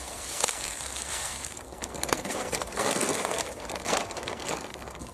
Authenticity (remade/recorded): remade